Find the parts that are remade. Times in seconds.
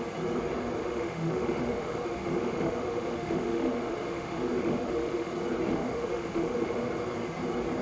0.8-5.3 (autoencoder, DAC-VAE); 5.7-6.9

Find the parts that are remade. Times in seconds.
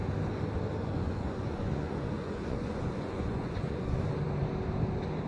0.8-4.0 (vocoder, Vocos)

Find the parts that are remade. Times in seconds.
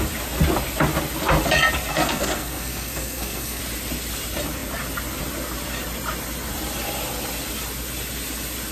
1.9-3.6 (codec, SNAC)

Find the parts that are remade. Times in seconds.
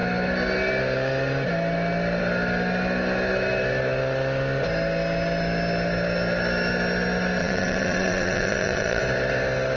7.4-9.0 (vocoder, WaveNeXt)